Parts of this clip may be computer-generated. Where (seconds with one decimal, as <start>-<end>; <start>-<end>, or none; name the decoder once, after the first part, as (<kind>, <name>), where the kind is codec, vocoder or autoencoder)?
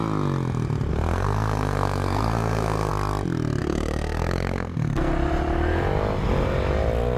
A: 0.9-2.9 (codec, SNAC); 3.6-5.1